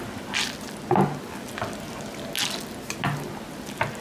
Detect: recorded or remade recorded